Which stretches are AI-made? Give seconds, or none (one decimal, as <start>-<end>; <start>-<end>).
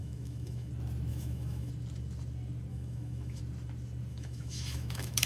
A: 0.0-0.7; 1.1-1.7; 2.7-3.4; 4.1-5.3